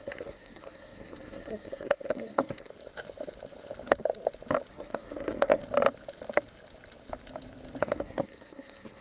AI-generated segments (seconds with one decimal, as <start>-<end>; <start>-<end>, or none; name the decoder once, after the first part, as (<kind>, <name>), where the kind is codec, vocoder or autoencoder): 0.0-2.7 (codec, SNAC); 4.7-5.6; 7.8-9.0